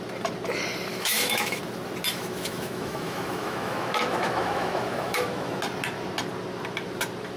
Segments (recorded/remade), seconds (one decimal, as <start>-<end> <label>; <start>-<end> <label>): 0.0-0.9 recorded; 0.9-1.6 remade; 1.6-2.1 recorded; 2.1-5.6 remade; 5.6-7.4 recorded